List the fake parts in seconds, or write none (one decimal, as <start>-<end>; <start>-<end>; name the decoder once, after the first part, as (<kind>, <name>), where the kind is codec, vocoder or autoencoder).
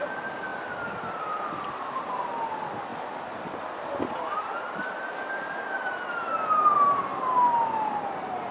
none